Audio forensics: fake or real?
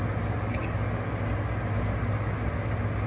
real